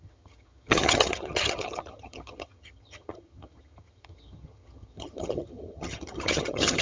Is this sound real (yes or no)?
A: no